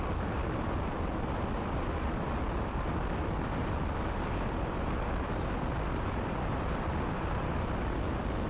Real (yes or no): no